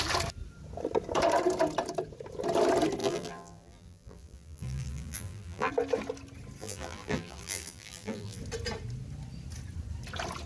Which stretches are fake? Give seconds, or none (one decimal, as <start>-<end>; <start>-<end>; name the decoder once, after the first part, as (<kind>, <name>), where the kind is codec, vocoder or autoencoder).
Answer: 3.0-5.7 (vocoder, BigVGAN v2); 6.6-8.4